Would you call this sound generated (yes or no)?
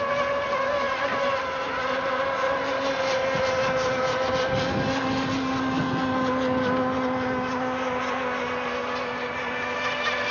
no